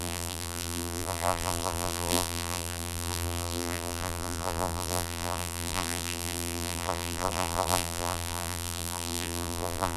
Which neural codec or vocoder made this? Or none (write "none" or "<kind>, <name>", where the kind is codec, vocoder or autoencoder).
vocoder, BigVGAN v2